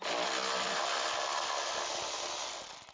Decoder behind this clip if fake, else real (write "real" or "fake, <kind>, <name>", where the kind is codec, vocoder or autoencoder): real